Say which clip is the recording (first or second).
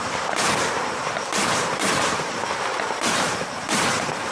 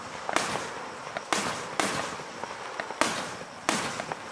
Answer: second